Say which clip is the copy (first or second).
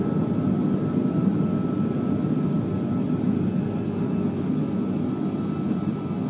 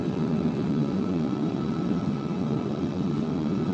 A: second